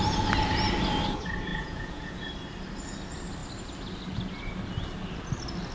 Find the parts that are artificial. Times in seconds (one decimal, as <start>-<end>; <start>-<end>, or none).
1.5-2.2